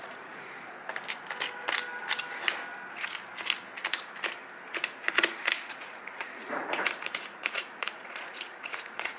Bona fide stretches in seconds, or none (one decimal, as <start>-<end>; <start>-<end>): 0.8-5.4